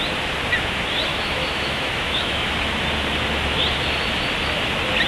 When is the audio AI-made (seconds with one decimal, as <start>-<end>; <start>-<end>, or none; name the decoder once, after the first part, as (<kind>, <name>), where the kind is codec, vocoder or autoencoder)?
1.1-2.5 (autoencoder, DAC-VAE)

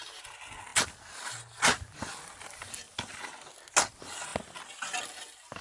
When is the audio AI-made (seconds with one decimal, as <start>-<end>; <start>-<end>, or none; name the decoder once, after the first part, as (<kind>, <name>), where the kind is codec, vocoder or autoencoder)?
none

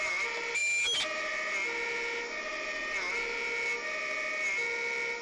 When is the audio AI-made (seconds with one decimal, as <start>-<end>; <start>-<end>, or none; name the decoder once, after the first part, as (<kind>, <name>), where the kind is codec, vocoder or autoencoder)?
none

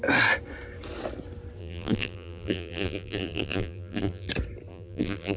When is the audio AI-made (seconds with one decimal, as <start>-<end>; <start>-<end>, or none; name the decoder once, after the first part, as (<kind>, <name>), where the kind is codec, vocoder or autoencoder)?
1.6-4.3 (vocoder, BigVGAN v2); 4.7-5.4

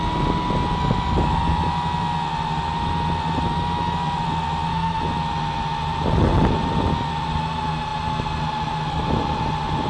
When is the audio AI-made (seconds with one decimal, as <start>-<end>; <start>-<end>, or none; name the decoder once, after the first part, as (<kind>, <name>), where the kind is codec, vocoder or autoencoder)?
none

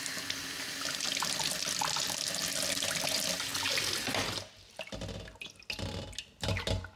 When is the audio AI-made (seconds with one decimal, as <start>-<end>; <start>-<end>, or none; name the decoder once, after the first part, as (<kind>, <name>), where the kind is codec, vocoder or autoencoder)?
none

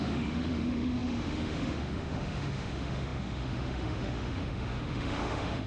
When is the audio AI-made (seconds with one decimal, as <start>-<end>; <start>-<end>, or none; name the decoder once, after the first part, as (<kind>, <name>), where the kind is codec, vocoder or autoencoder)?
0.0-5.7 (autoencoder, DAC-VAE)